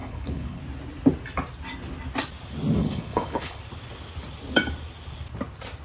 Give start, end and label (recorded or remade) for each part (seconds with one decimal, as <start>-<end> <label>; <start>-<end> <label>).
0.0-0.6 remade; 0.6-2.8 recorded; 2.8-3.6 remade; 3.6-5.8 recorded